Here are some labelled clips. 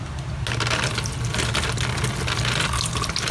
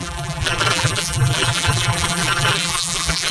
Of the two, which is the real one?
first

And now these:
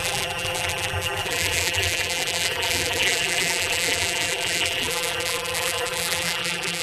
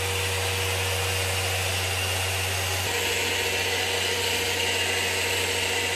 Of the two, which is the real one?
second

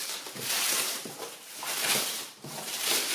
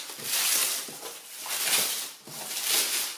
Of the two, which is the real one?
second